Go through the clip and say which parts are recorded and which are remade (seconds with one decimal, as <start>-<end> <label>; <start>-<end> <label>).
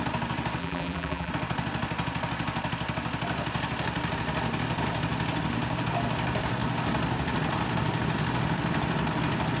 0.0-0.6 recorded; 0.6-1.3 remade; 1.3-9.6 recorded